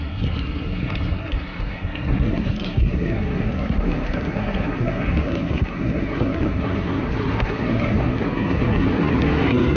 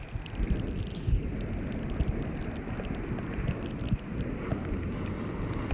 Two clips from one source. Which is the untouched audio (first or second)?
second